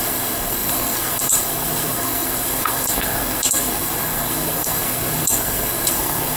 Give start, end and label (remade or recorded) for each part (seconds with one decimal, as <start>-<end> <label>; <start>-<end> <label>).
0.0-6.4 remade